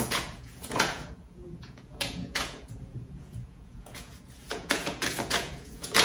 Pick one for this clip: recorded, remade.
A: remade